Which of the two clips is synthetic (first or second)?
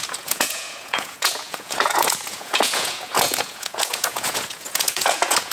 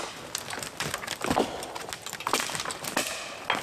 first